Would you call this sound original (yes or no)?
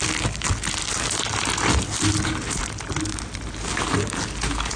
yes